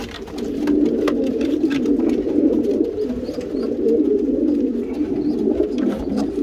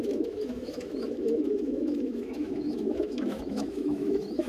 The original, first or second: first